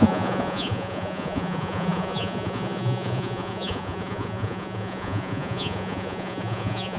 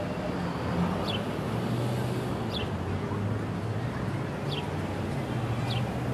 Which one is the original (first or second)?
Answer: second